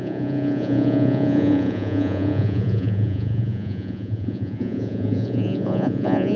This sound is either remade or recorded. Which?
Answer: remade